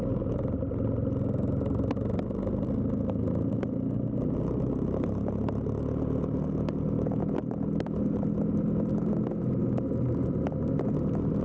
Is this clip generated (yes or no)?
no